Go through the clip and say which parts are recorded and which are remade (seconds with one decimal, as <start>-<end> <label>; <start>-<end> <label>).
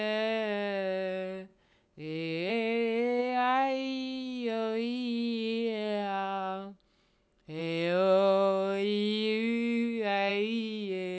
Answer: 0.0-1.5 recorded; 1.5-2.5 remade; 2.5-3.2 recorded; 3.2-6.8 remade; 6.8-11.2 recorded